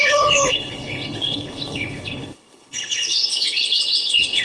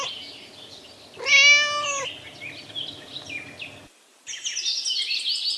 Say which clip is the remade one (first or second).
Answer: first